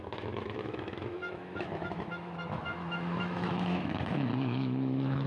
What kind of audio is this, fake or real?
fake